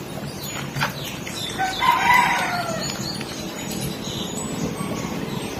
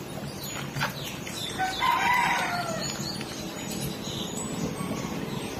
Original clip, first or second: second